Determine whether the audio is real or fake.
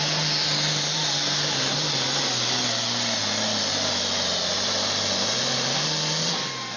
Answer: real